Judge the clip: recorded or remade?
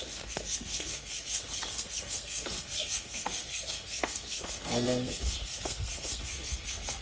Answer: remade